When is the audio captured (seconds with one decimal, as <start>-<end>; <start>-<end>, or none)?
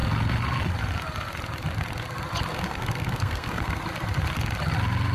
0.0-2.5; 3.8-5.1